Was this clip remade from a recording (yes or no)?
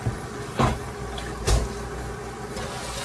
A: no